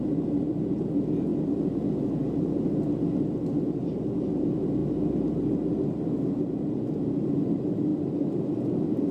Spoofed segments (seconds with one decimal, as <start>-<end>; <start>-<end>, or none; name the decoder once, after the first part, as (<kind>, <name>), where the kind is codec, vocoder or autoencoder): none